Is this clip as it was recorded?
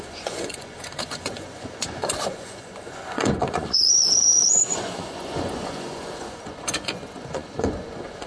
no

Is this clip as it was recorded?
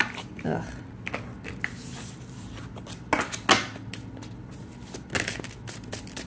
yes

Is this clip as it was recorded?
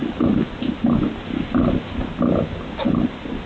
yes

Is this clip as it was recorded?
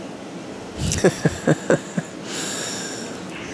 yes